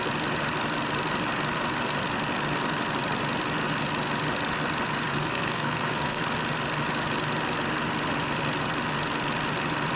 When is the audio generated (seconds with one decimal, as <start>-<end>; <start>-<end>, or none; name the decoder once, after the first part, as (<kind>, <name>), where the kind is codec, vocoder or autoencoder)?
5.1-6.2 (codec, SNAC)

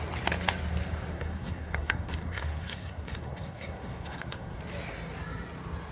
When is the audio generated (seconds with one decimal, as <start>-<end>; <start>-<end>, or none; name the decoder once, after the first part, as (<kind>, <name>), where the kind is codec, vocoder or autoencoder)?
1.1-4.6 (codec, SNAC)

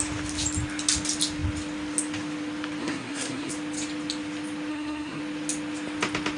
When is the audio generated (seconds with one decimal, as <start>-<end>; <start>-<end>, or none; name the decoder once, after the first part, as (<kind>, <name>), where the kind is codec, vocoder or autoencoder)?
2.8-3.5 (codec, SNAC); 4.7-5.2

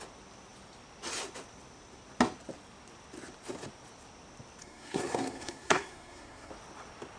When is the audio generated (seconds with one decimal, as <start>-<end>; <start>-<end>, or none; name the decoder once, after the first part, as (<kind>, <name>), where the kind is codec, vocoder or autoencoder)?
4.6-6.5 (codec, SNAC)

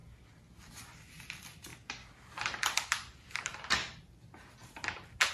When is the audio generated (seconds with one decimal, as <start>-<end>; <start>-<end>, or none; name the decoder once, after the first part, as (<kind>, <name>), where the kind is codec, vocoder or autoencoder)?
none